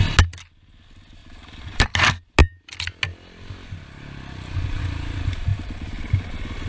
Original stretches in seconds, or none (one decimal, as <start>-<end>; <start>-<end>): 0.0-1.2; 1.9-5.5; 6.3-6.7